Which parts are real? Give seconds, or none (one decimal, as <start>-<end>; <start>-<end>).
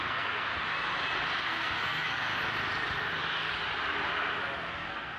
0.5-1.4; 2.3-4.7